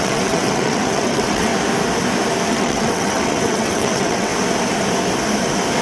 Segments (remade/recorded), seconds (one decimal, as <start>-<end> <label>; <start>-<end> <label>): 0.0-1.5 remade; 1.5-2.5 recorded; 2.5-4.3 remade; 4.3-5.8 recorded